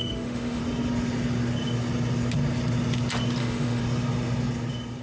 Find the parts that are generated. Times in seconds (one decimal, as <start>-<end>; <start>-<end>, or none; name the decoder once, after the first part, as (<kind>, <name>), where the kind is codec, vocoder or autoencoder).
0.0-0.6 (autoencoder, DAC-VAE); 3.4-3.8